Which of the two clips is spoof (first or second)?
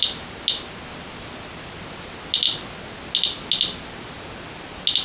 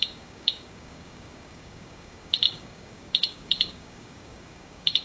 second